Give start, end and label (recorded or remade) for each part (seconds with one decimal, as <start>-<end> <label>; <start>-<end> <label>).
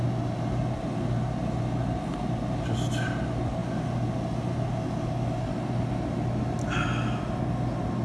0.0-8.0 recorded